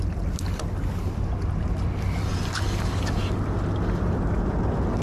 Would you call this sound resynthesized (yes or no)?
no